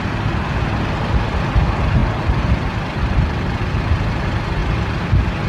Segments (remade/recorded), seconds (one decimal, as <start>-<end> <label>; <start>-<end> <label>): 0.0-2.0 recorded; 2.0-3.8 remade; 3.8-4.6 recorded; 4.6-5.1 remade; 5.1-5.5 recorded